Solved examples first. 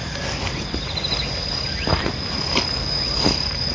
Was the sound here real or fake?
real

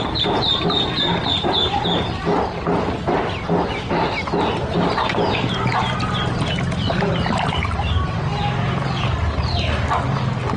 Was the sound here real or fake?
real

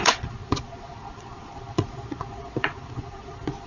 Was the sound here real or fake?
fake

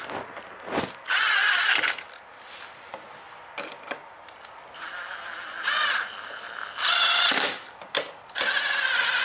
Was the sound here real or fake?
real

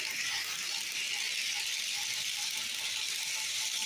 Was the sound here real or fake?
real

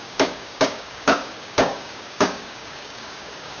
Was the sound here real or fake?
fake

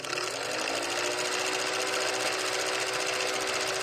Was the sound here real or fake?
real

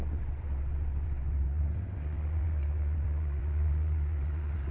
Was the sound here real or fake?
fake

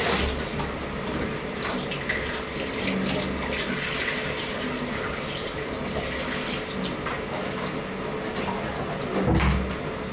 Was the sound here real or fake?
real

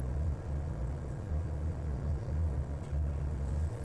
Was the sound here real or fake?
fake